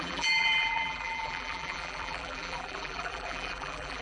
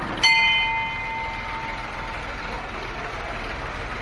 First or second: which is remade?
first